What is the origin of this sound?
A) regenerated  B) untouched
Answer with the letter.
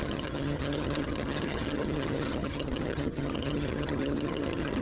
A